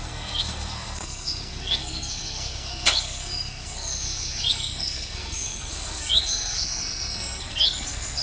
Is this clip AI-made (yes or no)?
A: yes